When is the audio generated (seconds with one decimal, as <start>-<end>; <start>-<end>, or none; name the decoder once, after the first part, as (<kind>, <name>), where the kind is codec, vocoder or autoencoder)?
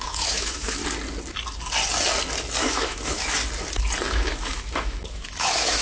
0.0-0.8 (autoencoder, DAC-VAE); 2.6-3.4; 4.1-5.8